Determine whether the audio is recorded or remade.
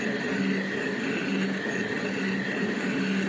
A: recorded